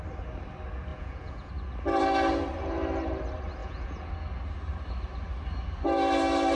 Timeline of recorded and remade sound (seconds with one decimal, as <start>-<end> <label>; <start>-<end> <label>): 0.0-0.9 recorded; 0.9-1.5 remade; 1.5-3.6 recorded; 3.6-4.1 remade; 4.1-6.6 recorded